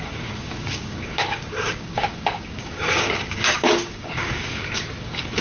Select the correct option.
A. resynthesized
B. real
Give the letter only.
A